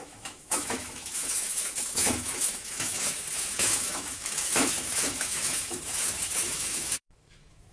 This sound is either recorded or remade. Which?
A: remade